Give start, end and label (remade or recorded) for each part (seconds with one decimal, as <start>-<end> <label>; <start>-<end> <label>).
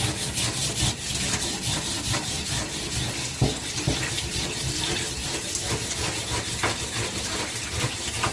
0.0-8.3 recorded